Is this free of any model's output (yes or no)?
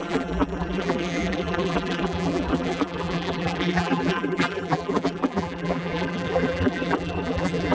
no